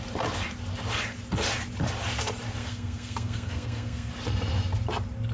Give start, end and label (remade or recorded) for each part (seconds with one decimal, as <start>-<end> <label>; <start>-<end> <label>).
0.0-2.6 recorded; 2.6-4.1 remade; 4.1-5.3 recorded